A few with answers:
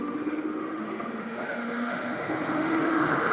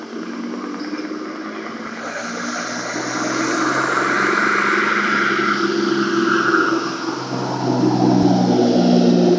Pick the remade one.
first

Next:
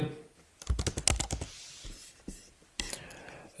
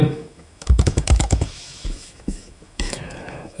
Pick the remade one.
second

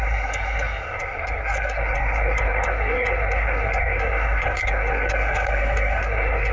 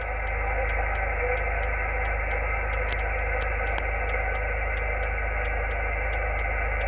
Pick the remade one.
first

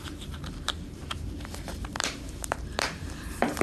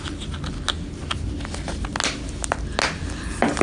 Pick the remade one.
first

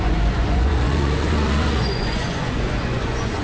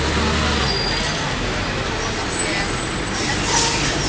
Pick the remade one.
first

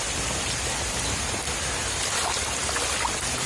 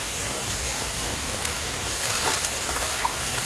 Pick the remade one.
second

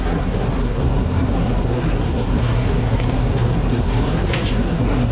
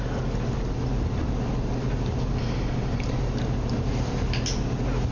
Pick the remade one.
first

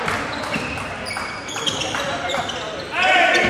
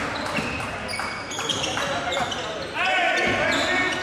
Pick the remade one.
first